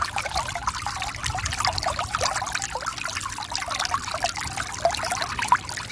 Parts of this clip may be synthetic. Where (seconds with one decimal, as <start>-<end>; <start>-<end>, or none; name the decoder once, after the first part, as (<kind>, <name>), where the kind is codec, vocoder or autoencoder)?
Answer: none